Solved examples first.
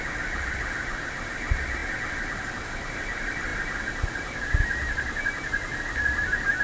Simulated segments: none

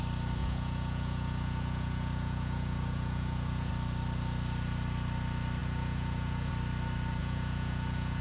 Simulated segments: 0.4-3.7 (vocoder, Vocos); 5.6-6.5; 7.2-8.2

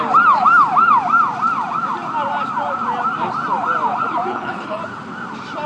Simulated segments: 4.3-4.8 (codec, HILCodec)

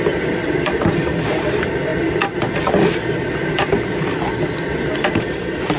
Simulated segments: 0.0-1.9 (vocoder, BigVGAN v2); 2.8-4.1; 5.2-5.8

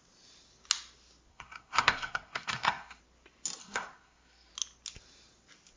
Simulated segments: 1.3-3.0 (codec, SNAC); 3.6-4.5